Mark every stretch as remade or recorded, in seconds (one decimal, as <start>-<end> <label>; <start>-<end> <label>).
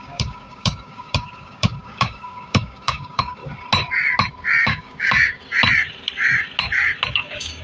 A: 0.0-3.4 remade; 3.4-4.6 recorded; 4.6-5.4 remade; 5.4-7.1 recorded; 7.1-7.6 remade